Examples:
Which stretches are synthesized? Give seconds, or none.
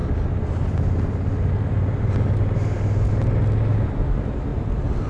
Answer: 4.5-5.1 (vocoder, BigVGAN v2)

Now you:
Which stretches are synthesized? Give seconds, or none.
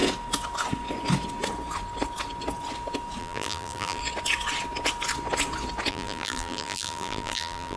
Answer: 3.2-4.0 (vocoder, BigVGAN v2); 5.9-7.8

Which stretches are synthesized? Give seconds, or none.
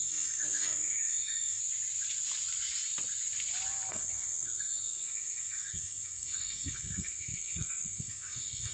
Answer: 0.0-1.6 (codec, SNAC); 3.9-8.7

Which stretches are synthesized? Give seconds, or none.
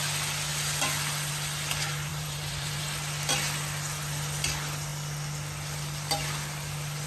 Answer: 2.1-2.8 (vocoder, BigVGAN v2)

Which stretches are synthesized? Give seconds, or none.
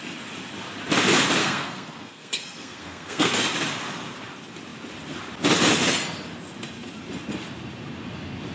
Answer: 1.4-3.3 (codec, SNAC)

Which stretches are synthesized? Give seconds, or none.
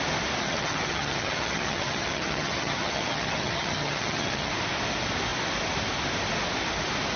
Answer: 0.4-4.5 (vocoder, HiFi-GAN)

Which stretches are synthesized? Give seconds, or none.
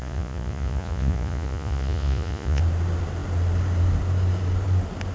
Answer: 0.0-2.6 (vocoder, Vocos)